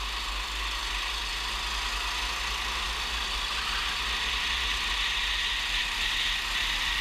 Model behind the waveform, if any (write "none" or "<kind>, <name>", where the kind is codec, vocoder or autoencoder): none